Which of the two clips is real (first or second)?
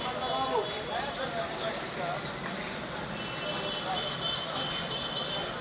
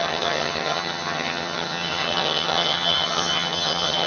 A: first